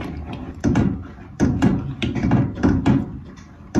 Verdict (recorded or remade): recorded